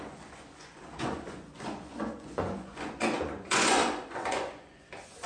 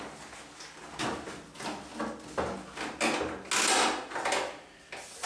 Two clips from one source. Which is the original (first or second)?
second